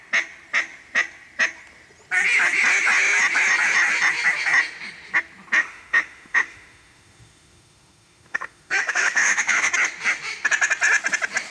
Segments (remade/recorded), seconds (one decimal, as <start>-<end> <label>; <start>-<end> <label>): 0.0-5.6 recorded; 5.6-9.7 remade; 9.7-11.5 recorded

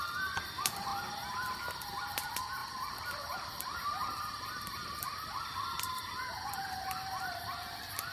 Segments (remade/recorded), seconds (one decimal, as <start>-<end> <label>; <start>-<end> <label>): 0.0-8.1 recorded

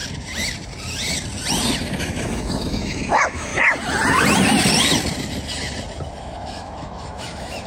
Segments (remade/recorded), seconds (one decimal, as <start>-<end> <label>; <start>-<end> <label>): 0.0-2.0 recorded; 2.0-3.5 remade; 3.5-6.2 recorded; 6.2-7.7 remade

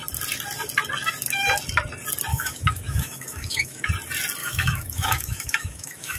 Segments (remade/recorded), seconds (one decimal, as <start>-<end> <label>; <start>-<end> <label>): 0.0-2.3 recorded; 2.3-3.9 remade; 3.9-4.4 recorded; 4.4-6.2 remade

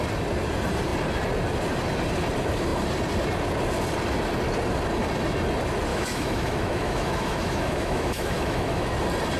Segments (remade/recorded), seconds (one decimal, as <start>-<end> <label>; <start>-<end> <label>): 0.0-5.9 recorded; 5.9-8.9 remade; 8.9-9.4 recorded

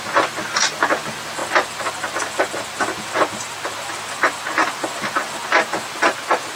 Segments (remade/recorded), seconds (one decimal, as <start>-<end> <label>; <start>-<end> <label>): 0.0-6.6 recorded

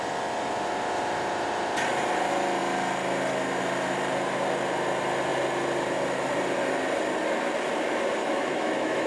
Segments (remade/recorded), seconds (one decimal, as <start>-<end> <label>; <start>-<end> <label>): 0.0-8.2 recorded; 8.2-9.1 remade

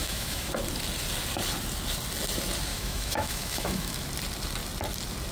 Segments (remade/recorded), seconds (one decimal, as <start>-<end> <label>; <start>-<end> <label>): 0.0-0.5 remade; 0.5-2.7 recorded; 2.7-4.1 remade; 4.1-5.3 recorded